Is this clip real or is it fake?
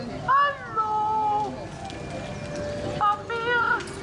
real